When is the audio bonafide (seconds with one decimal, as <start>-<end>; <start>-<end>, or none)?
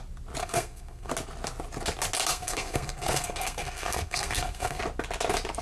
0.0-0.4; 1.1-2.3; 4.8-5.6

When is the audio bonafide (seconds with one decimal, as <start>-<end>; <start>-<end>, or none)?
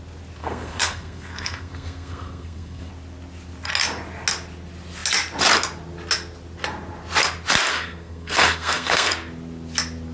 0.0-0.4; 2.9-7.7; 9.1-10.1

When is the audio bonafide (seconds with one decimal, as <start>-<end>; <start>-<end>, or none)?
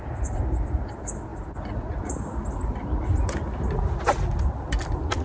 0.0-5.2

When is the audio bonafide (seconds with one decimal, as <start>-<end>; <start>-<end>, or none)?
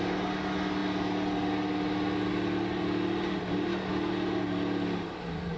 0.0-5.6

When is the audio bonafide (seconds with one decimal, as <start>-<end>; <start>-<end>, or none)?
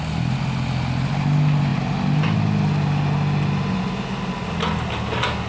0.0-5.5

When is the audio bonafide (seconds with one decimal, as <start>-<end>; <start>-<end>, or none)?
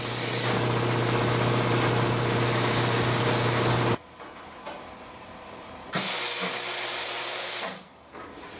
0.0-7.4; 8.2-8.6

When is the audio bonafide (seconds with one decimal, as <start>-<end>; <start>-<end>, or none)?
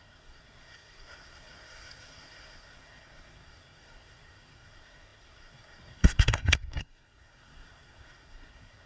none